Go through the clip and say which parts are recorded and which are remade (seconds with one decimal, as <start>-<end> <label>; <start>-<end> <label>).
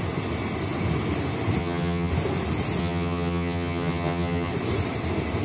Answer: 0.0-1.6 recorded; 1.6-2.1 remade; 2.1-2.8 recorded; 2.8-4.5 remade; 4.5-5.4 recorded